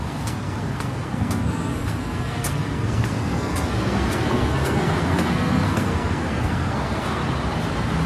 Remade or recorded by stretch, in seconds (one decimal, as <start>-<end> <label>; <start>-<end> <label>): 0.0-7.2 remade; 7.2-8.1 recorded